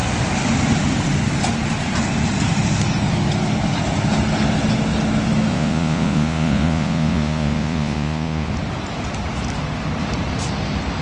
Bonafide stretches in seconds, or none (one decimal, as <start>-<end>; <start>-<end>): 0.0-5.5; 8.5-11.0

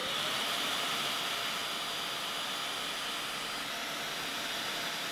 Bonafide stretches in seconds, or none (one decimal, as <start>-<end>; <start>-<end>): 1.1-4.3

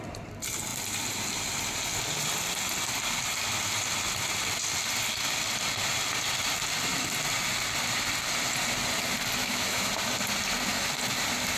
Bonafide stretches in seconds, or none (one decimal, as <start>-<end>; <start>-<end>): 0.0-9.4; 9.9-11.6

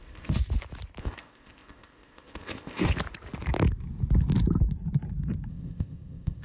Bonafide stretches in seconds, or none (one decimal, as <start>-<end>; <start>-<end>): 0.4-1.0; 2.9-5.5

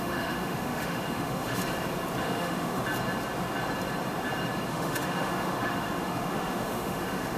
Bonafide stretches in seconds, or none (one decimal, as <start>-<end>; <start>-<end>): 1.6-2.2; 2.8-4.7